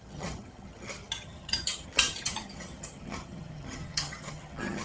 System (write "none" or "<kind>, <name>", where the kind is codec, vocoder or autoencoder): vocoder, HiFi-GAN